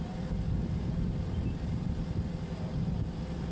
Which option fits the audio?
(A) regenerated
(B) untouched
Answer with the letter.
A